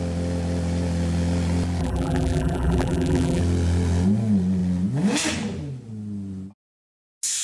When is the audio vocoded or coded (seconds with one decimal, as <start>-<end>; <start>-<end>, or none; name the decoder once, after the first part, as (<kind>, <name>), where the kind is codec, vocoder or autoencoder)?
1.8-3.4 (vocoder, BigVGAN v2)

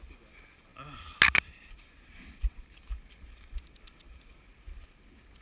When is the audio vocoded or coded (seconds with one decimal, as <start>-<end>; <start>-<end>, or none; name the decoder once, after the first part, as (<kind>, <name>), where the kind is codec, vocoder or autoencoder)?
none

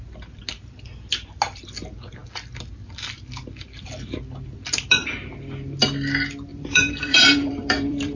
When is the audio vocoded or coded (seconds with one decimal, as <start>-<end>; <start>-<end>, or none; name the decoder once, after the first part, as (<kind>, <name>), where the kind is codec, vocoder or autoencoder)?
6.5-8.2 (vocoder, BigVGAN v2)

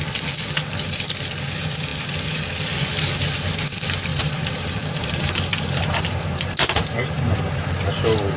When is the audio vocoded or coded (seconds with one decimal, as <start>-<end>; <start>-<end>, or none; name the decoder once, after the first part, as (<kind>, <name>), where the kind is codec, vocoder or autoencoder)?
4.1-7.9 (vocoder, BigVGAN v2)

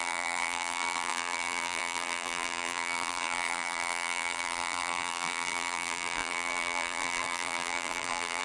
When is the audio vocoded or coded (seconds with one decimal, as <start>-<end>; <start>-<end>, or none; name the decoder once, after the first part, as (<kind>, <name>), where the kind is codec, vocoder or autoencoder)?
0.0-8.4 (vocoder, BigVGAN v2)

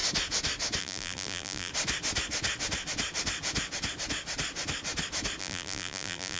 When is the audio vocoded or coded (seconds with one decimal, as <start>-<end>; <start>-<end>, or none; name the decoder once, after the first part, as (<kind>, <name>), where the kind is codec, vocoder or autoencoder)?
0.8-1.7 (vocoder, BigVGAN v2); 5.4-6.4

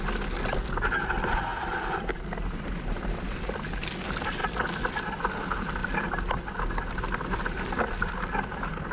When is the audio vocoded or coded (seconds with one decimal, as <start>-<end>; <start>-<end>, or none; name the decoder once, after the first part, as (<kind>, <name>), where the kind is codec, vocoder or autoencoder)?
1.5-2.1 (vocoder, BigVGAN v2)